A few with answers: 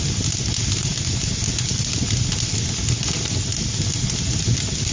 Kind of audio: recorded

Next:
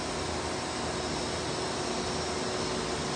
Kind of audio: recorded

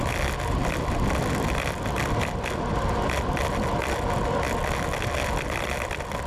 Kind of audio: recorded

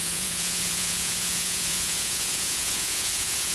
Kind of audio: remade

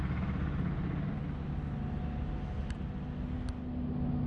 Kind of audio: recorded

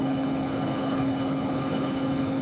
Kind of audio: remade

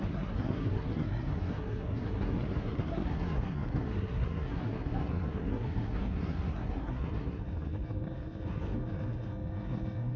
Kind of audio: remade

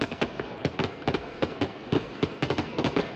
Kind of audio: remade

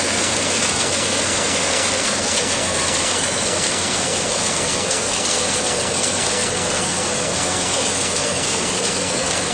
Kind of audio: remade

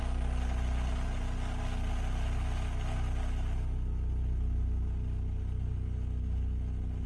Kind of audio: recorded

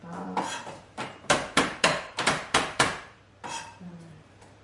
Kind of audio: remade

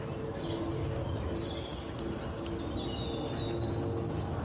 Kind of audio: recorded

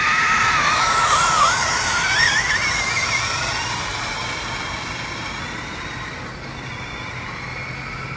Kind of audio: recorded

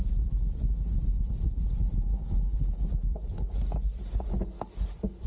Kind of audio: recorded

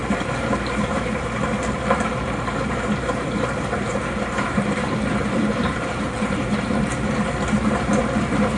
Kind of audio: remade